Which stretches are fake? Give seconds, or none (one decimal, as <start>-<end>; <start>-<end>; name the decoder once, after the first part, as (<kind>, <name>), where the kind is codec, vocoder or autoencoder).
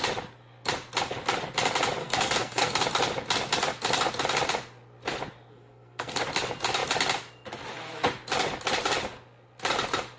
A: 2.0-2.8 (codec, SNAC); 5.5-6.2